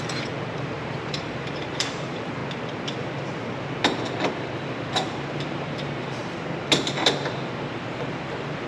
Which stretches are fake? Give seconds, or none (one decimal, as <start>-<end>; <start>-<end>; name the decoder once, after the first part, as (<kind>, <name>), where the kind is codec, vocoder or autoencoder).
0.0-2.4 (vocoder, BigVGAN v2); 4.3-6.2; 7.0-8.7